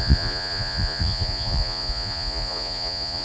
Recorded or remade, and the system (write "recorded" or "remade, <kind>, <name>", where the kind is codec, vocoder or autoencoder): remade, vocoder, Vocos